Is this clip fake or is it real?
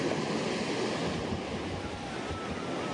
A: real